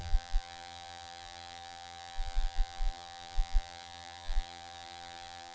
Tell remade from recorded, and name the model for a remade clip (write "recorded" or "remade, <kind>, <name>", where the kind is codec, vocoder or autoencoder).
remade, vocoder, BigVGAN v2